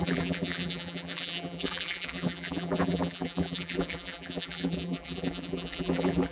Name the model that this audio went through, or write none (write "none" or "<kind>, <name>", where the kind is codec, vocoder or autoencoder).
vocoder, BigVGAN v2